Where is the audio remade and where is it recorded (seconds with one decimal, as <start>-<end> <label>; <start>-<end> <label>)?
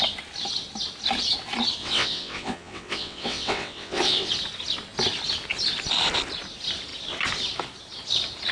0.0-1.8 recorded; 1.8-4.3 remade; 4.3-8.5 recorded